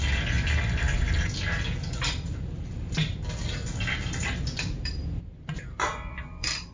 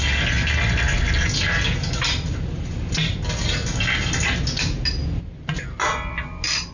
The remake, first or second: first